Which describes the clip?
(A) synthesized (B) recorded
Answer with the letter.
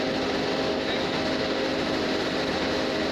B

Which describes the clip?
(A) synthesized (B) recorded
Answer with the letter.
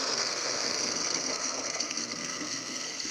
A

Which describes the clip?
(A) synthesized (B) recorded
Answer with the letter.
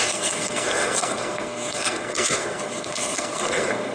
A